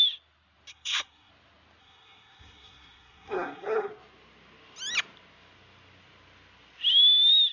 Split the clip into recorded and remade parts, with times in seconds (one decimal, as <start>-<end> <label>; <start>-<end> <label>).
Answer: 0.0-0.7 recorded; 0.7-1.3 remade; 1.3-1.8 recorded; 1.8-3.9 remade; 3.9-7.5 recorded